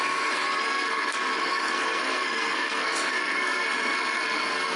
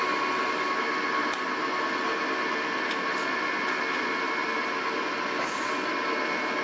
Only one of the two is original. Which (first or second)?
second